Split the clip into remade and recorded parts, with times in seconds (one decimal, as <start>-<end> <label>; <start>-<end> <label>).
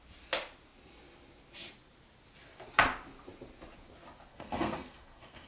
0.0-4.3 recorded; 4.3-5.5 remade